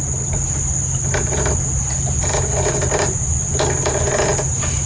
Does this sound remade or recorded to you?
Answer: recorded